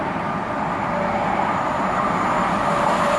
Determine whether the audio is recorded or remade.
recorded